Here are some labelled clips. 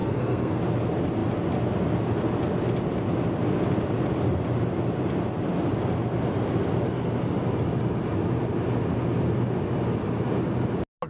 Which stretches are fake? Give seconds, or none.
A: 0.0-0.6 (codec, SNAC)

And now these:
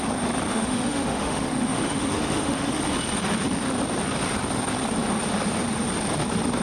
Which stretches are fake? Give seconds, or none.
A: 0.5-2.7 (autoencoder, DAC-VAE)